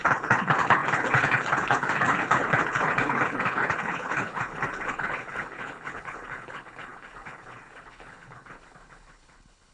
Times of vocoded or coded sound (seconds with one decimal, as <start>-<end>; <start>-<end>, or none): 0.0-9.7